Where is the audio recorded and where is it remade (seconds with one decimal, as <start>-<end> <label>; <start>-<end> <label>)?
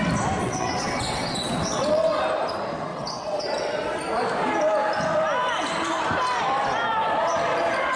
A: 0.0-0.4 recorded; 0.4-2.2 remade; 2.2-2.9 recorded; 2.9-4.0 remade; 4.0-8.0 recorded